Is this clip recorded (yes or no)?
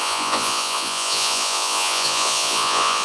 no